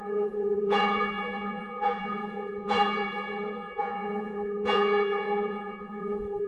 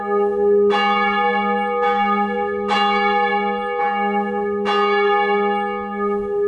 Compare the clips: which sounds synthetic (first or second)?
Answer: first